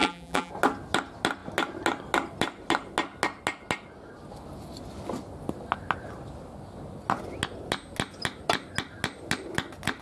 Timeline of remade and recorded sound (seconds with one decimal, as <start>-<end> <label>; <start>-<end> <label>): 0.0-0.5 remade; 0.5-10.0 recorded

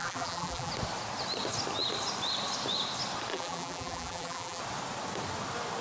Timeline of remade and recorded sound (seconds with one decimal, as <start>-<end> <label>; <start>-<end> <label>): 0.0-0.7 remade; 0.7-3.3 recorded; 3.3-4.6 remade; 4.6-5.8 recorded

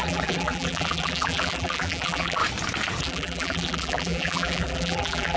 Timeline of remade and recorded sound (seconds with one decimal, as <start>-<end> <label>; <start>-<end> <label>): 0.0-2.4 remade; 2.4-3.0 recorded; 3.0-5.4 remade

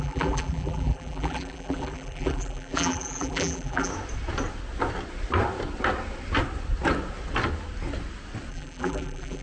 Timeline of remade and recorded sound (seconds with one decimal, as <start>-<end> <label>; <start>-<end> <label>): 0.0-3.9 remade; 3.9-8.5 recorded; 8.5-9.4 remade

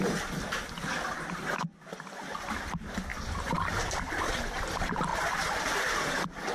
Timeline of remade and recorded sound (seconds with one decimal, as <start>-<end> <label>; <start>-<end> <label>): 0.0-5.1 recorded; 5.1-6.5 remade

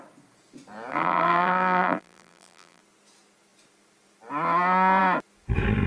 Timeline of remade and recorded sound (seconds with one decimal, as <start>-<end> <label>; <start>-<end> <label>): 0.0-0.9 recorded; 0.9-2.8 remade; 2.8-5.9 recorded

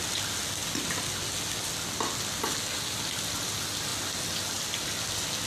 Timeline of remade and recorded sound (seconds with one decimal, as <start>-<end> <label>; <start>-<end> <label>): 0.0-5.5 recorded